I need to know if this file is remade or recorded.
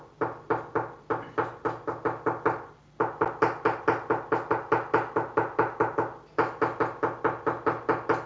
recorded